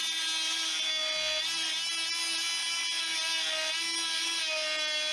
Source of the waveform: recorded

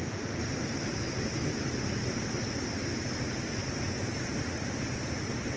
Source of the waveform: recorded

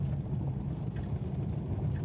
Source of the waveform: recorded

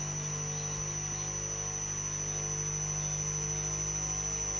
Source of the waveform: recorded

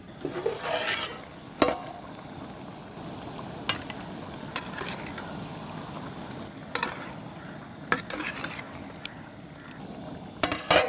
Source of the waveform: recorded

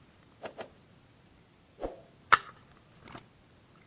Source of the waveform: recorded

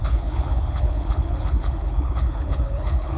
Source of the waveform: remade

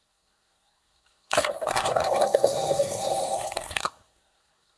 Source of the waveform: remade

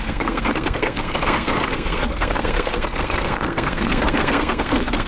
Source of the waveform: remade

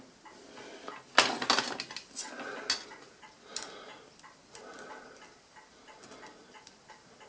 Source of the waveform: recorded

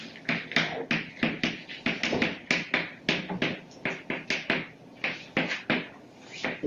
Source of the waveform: recorded